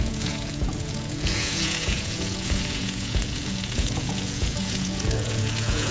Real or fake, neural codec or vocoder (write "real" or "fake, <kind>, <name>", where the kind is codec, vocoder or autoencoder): fake, vocoder, Vocos